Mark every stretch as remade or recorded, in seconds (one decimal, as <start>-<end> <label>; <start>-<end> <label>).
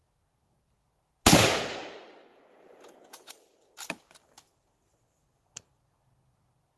0.0-2.3 recorded; 2.3-3.3 remade; 3.3-6.8 recorded